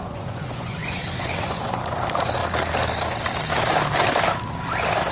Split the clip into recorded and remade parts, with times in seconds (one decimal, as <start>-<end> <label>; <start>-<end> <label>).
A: 0.0-1.8 remade; 1.8-5.1 recorded